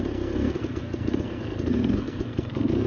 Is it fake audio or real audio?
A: fake